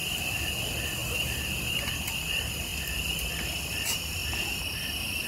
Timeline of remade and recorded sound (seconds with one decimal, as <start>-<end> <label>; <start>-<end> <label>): 0.0-0.6 remade; 0.6-1.0 recorded; 1.0-1.8 remade; 1.8-5.3 recorded